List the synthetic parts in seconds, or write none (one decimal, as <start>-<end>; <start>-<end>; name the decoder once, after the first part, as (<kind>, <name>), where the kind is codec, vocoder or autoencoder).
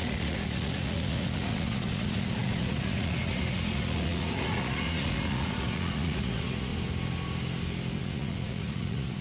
0.0-6.7 (vocoder, Vocos); 8.0-9.2